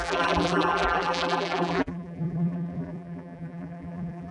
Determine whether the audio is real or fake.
fake